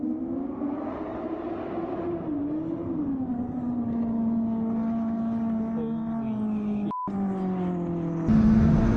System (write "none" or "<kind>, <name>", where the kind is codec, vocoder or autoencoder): none